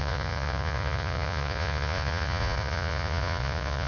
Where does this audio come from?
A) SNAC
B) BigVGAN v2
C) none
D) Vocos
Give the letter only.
D